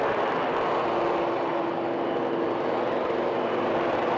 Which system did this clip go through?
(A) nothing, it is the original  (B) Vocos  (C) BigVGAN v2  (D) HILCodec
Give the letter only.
A